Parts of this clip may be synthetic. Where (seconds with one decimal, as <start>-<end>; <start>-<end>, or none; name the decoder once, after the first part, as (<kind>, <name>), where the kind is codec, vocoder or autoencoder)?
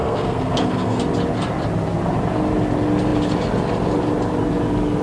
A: 0.0-1.0 (codec, SNAC)